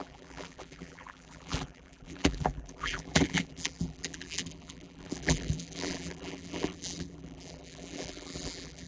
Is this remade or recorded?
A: remade